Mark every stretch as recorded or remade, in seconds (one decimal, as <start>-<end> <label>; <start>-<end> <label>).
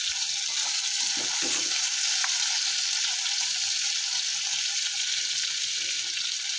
0.0-6.6 recorded